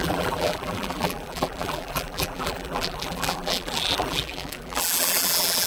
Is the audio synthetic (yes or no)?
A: yes